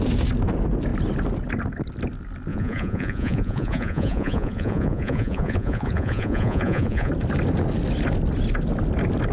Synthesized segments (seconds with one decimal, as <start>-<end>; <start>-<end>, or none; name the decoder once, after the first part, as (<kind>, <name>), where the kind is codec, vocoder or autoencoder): 2.5-7.1 (vocoder, Vocos)